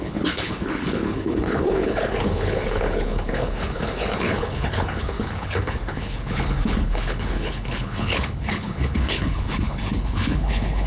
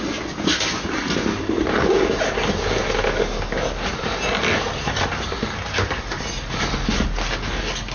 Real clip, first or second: second